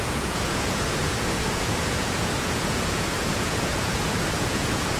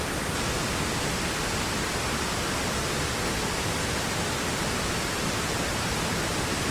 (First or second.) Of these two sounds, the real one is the second